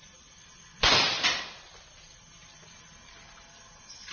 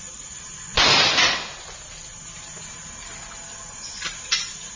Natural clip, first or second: second